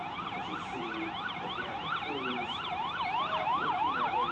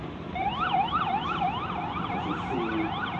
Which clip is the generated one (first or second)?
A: first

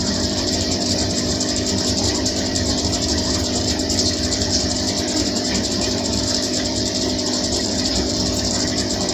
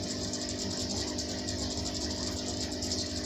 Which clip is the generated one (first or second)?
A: first